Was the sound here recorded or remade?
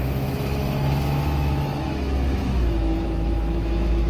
remade